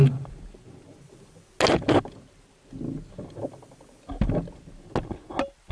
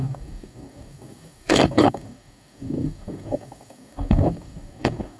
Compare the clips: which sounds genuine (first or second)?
first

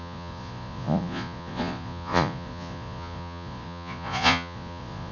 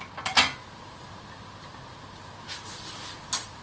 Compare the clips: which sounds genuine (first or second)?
second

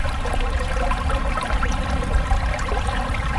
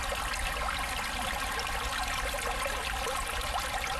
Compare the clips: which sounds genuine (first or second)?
second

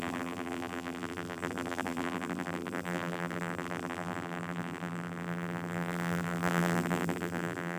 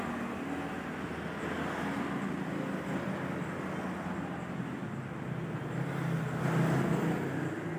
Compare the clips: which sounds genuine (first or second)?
second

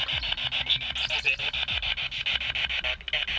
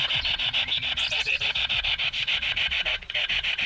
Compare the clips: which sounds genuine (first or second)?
first